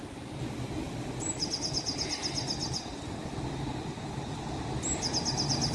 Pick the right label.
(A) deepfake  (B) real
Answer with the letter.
B